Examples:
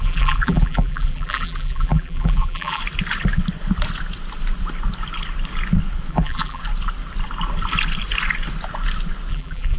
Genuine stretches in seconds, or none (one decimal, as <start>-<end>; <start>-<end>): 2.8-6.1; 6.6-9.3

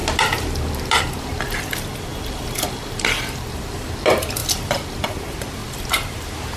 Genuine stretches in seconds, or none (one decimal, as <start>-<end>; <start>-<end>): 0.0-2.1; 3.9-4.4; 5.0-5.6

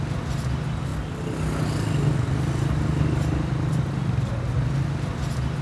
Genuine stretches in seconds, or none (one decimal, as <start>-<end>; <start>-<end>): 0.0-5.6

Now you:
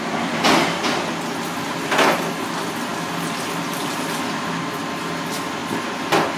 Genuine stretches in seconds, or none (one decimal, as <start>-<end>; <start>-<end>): 0.0-5.6

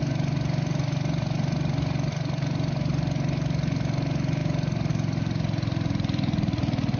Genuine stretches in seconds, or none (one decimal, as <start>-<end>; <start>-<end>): 0.0-7.0

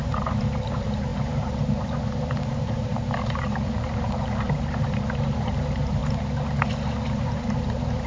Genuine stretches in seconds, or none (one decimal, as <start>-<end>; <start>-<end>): 6.0-6.7